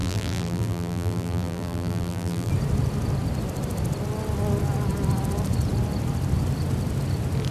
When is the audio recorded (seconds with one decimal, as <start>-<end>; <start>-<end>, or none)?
2.5-7.5